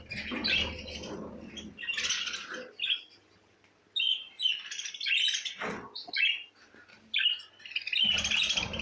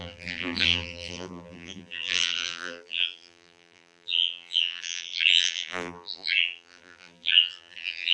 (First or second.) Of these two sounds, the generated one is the second